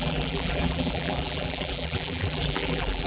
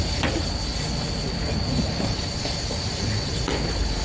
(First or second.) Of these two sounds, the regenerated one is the first